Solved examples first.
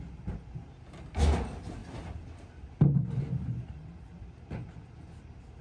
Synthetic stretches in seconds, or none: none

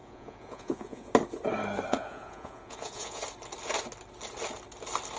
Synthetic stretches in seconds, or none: 0.0-1.1; 1.9-3.2